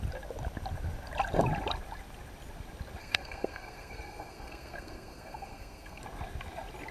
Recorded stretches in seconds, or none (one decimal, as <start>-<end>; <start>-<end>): 0.0-3.0; 6.0-6.9